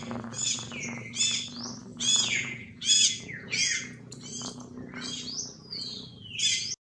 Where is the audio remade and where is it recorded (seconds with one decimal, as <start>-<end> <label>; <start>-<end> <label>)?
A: 0.0-1.9 recorded; 1.9-4.2 remade; 4.2-6.8 recorded